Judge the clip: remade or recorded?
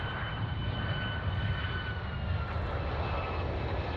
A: recorded